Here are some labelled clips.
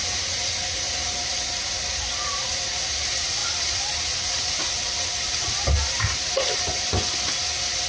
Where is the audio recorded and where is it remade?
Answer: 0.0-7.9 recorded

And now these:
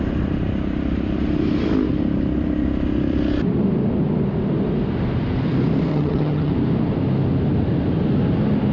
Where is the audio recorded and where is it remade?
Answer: 0.0-5.9 recorded; 5.9-6.5 remade; 6.5-8.7 recorded

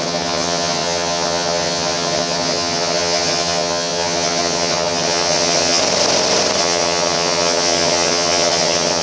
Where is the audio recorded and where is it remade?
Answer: 0.0-5.8 remade; 5.8-6.6 recorded; 6.6-9.0 remade

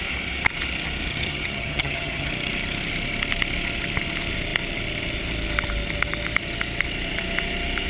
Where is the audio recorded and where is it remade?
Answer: 0.0-1.1 recorded; 1.1-2.3 remade; 2.3-7.9 recorded